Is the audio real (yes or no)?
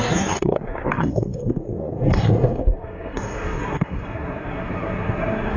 no